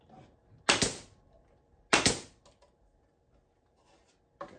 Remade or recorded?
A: recorded